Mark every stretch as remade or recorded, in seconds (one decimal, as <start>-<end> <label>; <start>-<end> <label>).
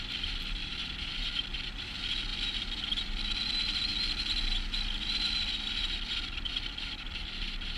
0.0-3.9 remade; 3.9-5.0 recorded; 5.0-7.8 remade